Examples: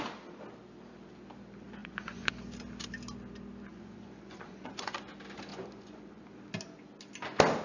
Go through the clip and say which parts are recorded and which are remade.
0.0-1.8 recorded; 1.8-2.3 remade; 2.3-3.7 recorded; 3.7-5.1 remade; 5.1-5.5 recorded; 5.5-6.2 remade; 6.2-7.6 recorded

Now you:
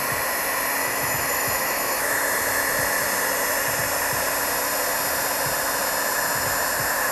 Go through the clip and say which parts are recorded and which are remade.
0.0-0.8 recorded; 0.8-2.1 remade; 2.1-7.1 recorded

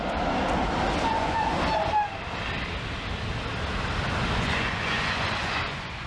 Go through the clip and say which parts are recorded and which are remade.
0.0-1.1 recorded; 1.1-1.5 remade; 1.5-4.3 recorded; 4.3-6.1 remade

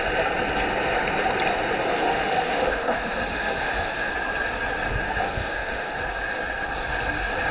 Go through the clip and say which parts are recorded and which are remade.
0.0-1.9 recorded; 1.9-4.1 remade; 4.1-4.9 recorded; 4.9-6.0 remade; 6.0-7.5 recorded